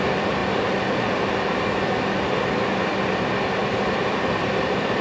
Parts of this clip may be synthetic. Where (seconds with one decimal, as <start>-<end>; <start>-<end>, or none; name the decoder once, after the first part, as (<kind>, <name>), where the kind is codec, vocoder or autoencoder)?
0.0-0.4 (vocoder, BigVGAN v2); 3.1-5.0